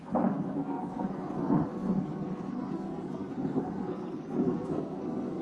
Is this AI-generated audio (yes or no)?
yes